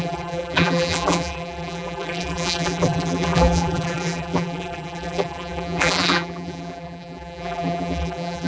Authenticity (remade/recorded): remade